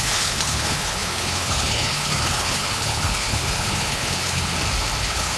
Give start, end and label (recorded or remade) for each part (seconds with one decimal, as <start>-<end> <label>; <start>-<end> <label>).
0.0-4.5 remade; 4.5-5.0 recorded; 5.0-5.4 remade